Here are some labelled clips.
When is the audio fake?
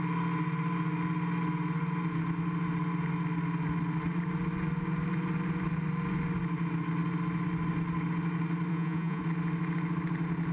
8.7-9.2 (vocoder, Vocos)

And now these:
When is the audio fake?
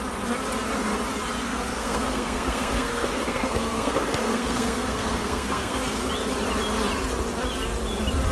1.4-6.1 (codec, SNAC)